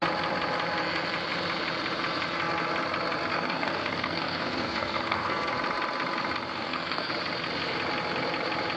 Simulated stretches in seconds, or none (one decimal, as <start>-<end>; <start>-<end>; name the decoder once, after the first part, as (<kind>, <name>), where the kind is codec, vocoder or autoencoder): 3.3-5.5 (codec, SNAC); 6.5-7.1